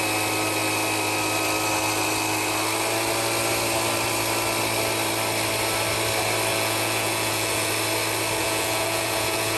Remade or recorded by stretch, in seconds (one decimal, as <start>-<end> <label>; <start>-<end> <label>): 0.0-6.5 recorded; 6.5-7.7 remade; 7.7-8.4 recorded; 8.4-9.6 remade